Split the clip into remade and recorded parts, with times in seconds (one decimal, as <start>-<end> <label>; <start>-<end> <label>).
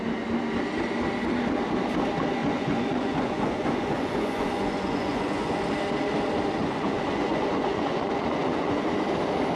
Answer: 0.0-2.4 recorded; 2.4-5.6 remade; 5.6-6.6 recorded; 6.6-8.8 remade; 8.8-9.6 recorded